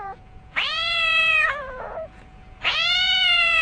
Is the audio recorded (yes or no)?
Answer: no